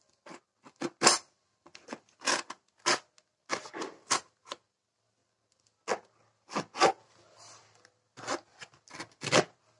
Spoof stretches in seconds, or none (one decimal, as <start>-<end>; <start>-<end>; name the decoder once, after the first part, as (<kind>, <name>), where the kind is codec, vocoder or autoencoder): none